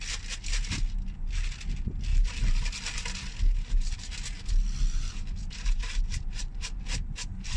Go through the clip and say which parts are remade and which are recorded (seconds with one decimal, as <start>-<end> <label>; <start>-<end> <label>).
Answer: 0.0-2.1 recorded; 2.1-2.6 remade; 2.6-5.4 recorded; 5.4-6.8 remade; 6.8-7.6 recorded